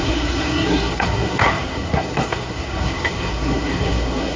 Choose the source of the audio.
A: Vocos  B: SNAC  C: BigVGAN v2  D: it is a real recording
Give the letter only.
B